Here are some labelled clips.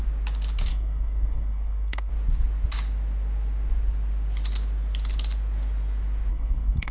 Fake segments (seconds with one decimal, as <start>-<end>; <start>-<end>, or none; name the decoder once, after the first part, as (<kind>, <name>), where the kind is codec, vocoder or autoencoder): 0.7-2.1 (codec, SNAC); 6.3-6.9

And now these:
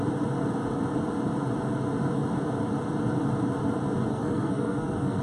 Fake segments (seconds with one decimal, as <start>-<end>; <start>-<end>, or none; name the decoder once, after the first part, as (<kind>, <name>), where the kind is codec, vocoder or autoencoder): 4.1-5.2 (codec, SNAC)

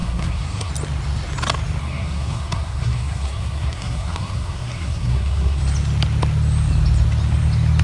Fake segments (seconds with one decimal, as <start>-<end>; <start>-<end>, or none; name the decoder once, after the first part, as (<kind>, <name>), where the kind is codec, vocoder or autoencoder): 0.0-0.7 (codec, SNAC); 1.8-5.6

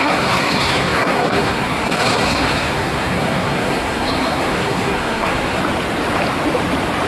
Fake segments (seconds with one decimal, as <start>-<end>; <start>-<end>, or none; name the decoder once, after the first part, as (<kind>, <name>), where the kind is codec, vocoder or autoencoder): 0.0-5.6 (codec, SNAC)

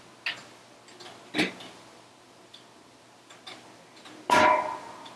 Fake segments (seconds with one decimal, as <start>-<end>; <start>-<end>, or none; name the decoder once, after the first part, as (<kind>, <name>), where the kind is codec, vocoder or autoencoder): none

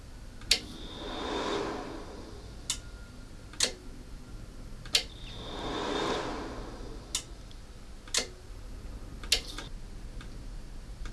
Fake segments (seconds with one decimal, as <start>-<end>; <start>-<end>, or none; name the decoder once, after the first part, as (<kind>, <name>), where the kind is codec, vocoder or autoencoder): none

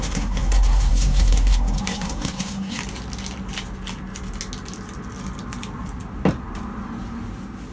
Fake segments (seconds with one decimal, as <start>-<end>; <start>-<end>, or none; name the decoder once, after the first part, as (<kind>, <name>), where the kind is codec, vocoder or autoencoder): 0.0-2.8 (codec, SNAC)